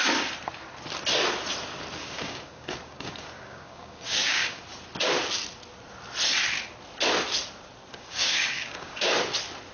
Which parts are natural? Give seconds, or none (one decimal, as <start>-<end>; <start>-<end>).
0.0-2.0; 4.6-7.9; 9.1-9.7